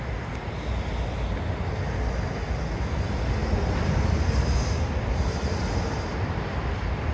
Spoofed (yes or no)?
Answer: no